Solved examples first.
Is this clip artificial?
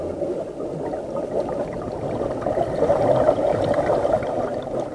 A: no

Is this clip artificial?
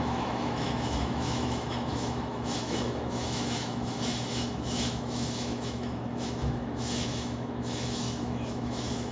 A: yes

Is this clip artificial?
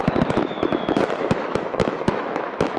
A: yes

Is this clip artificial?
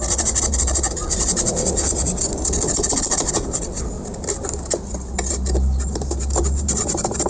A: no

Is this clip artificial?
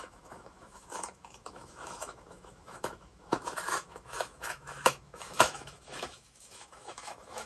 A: yes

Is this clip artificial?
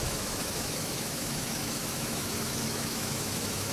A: yes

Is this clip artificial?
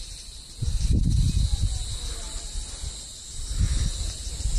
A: no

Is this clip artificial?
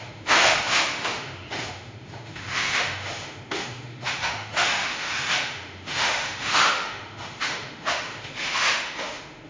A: yes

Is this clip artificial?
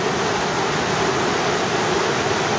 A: no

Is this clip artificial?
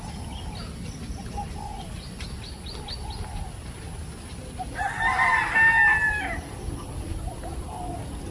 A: no